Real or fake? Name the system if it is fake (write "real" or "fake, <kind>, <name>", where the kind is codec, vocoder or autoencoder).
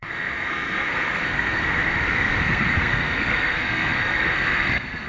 fake, codec, SNAC